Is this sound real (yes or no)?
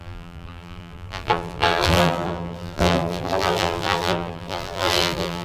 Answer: no